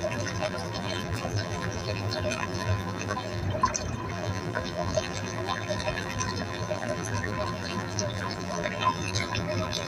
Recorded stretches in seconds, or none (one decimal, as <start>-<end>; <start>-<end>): 3.4-4.1